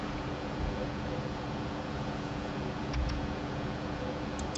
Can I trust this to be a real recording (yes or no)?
no